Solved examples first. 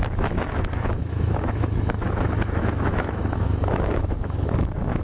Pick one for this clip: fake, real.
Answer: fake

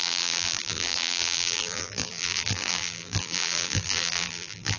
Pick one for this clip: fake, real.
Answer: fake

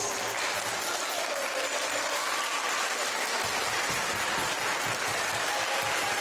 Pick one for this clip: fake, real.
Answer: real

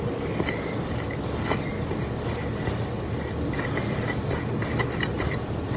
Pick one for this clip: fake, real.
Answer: real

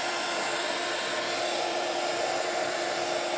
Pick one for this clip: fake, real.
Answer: fake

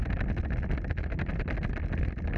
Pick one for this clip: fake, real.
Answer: real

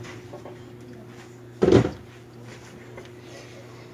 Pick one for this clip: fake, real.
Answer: fake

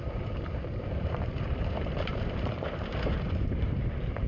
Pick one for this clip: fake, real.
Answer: fake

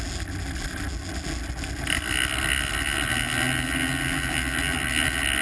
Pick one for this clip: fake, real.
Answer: real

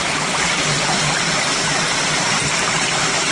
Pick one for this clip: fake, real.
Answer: real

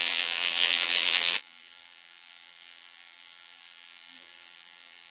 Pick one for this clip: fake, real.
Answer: fake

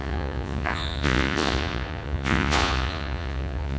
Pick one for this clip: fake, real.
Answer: fake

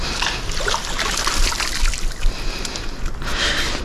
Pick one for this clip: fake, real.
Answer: real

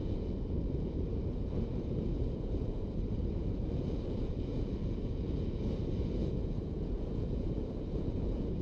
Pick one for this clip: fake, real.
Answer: fake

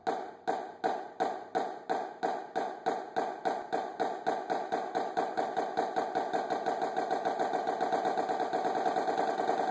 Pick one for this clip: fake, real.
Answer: real